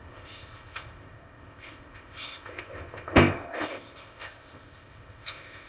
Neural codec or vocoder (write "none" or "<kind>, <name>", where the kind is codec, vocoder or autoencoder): codec, ZipCodec